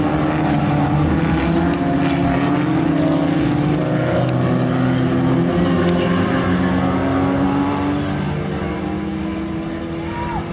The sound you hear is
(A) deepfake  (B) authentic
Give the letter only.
B